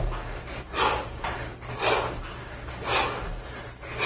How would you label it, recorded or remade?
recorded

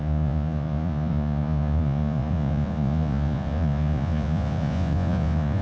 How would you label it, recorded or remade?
remade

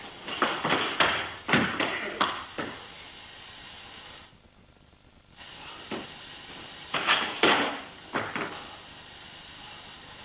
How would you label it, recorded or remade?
recorded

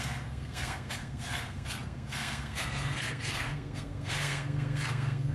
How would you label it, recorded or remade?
remade